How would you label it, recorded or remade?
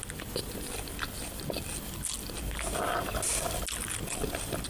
recorded